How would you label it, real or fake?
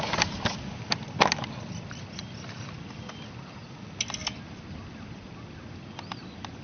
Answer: real